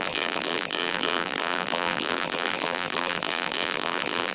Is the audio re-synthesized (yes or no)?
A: yes